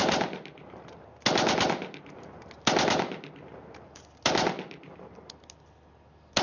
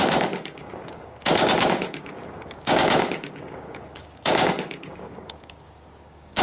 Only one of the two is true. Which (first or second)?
first